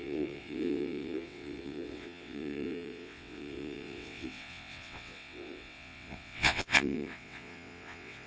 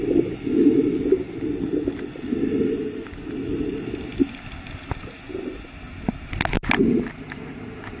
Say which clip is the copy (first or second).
first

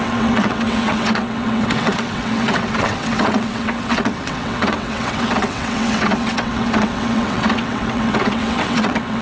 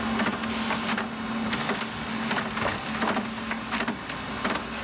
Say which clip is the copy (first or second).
first